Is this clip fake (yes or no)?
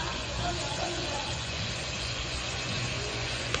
yes